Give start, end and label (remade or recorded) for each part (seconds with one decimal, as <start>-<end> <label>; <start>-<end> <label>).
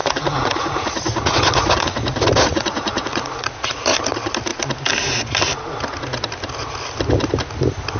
0.0-4.0 remade; 4.0-8.0 recorded